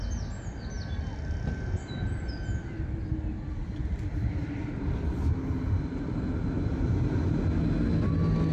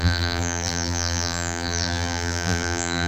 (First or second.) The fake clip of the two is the second